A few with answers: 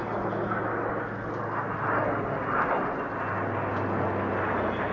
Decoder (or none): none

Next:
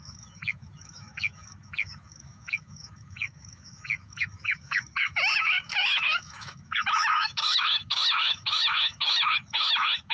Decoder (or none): autoencoder, DAC-VAE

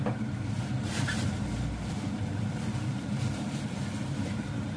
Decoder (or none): vocoder, BigVGAN v2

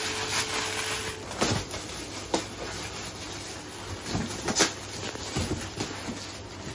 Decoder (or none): none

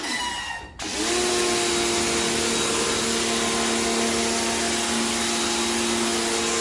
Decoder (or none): none